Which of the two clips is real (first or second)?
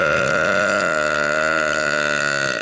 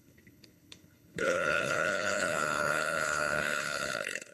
first